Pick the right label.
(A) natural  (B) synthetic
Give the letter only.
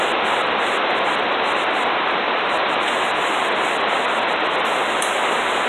A